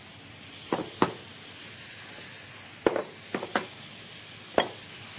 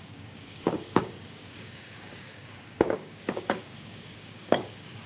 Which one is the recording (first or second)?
first